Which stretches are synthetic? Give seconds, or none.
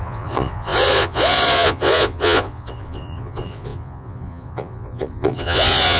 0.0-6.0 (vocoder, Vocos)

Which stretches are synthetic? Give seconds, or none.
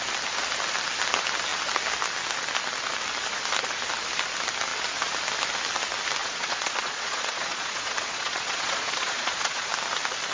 6.2-9.7 (vocoder, Vocos)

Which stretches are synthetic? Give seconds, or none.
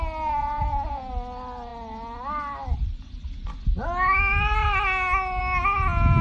0.4-1.1 (vocoder, Vocos)